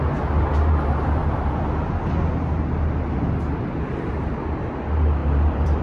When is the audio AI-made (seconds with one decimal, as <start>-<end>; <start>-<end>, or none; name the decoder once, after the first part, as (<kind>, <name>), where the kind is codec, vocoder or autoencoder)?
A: 5.2-5.8 (vocoder, BigVGAN v2)